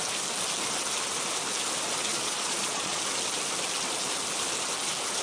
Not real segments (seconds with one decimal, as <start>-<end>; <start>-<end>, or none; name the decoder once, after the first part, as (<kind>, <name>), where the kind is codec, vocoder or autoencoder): 2.1-3.0 (vocoder, Vocos)